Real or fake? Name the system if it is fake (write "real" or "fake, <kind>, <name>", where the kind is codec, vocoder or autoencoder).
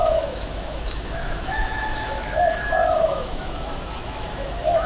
fake, autoencoder, DAC-VAE